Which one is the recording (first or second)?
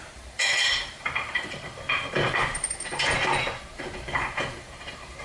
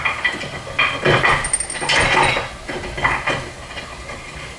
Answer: second